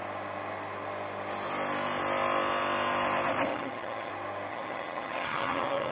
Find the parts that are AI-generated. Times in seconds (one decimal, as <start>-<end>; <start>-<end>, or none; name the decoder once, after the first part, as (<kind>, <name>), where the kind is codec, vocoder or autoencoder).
3.5-4.1 (vocoder, HiFi-GAN); 4.5-5.9